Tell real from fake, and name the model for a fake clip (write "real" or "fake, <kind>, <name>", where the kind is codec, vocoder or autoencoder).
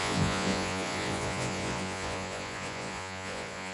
fake, vocoder, Vocos